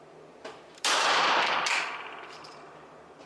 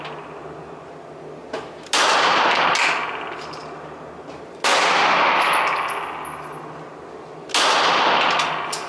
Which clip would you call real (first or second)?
second